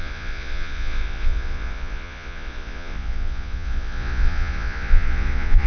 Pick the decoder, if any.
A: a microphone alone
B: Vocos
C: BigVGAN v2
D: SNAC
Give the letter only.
B